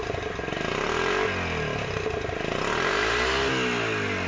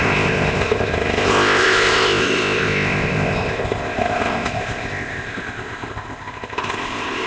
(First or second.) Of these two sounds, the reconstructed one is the second